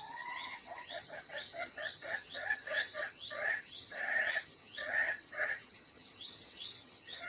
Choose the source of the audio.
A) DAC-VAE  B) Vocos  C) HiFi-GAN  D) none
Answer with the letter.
C